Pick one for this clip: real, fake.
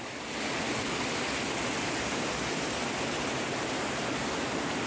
real